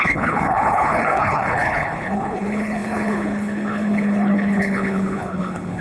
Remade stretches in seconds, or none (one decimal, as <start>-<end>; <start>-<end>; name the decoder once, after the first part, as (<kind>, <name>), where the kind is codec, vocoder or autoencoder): 0.0-5.8 (codec, HILCodec)